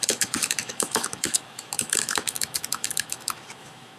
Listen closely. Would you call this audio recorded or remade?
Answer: remade